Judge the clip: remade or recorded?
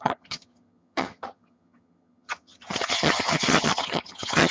remade